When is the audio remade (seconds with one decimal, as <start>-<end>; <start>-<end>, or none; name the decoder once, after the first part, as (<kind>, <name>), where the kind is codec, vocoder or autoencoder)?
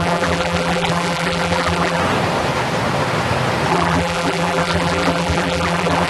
0.0-2.0 (vocoder, BigVGAN v2); 3.7-6.1